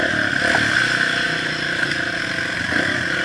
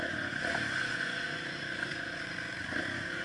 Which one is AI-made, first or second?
second